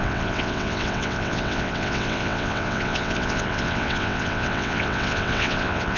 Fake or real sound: fake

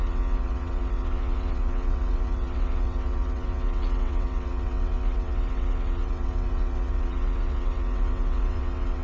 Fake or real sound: fake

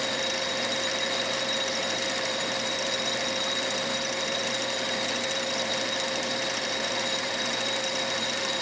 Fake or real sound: real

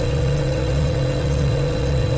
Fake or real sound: fake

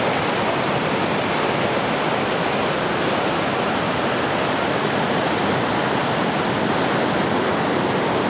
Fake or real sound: real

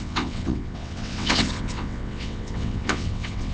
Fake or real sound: fake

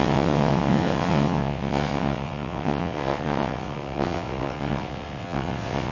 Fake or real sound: fake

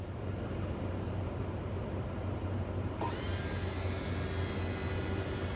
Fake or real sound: real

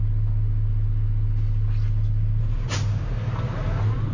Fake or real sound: real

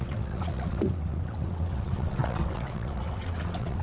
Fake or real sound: fake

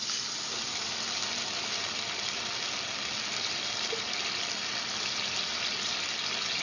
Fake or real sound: real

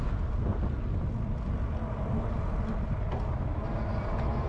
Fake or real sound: real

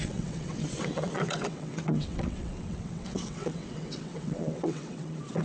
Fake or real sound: fake